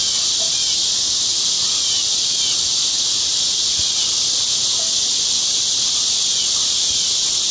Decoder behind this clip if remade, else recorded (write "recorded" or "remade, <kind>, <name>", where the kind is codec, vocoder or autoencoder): recorded